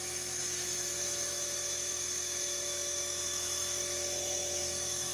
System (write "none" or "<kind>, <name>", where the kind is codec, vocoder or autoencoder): autoencoder, DAC-VAE